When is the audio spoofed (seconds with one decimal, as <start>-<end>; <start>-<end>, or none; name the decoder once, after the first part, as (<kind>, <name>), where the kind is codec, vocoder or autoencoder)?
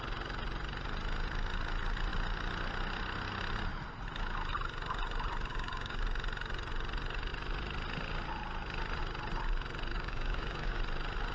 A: 5.5-6.0 (codec, DAC); 9.9-10.8